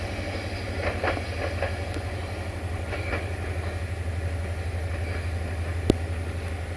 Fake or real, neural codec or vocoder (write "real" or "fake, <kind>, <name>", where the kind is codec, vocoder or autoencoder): real